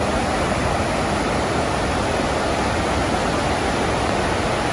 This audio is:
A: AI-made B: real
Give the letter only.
B